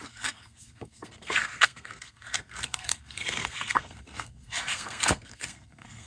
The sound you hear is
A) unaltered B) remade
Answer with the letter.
B